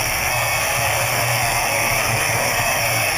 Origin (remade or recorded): remade